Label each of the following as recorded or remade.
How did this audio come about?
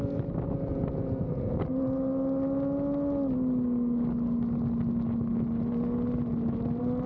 recorded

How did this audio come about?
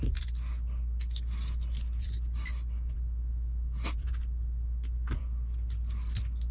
recorded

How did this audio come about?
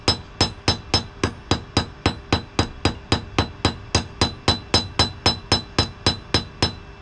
recorded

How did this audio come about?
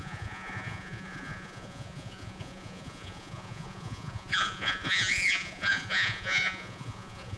remade